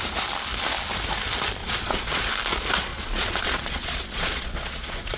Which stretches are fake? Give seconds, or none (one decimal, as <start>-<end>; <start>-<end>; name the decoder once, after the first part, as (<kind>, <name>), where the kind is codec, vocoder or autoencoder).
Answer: 1.6-2.3 (vocoder, Vocos); 2.9-5.2